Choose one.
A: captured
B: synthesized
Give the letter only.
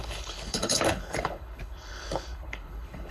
B